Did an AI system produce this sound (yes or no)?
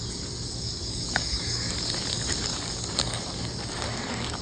yes